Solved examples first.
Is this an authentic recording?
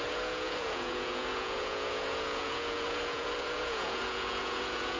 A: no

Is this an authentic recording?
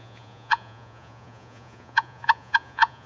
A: no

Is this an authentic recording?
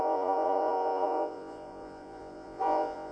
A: no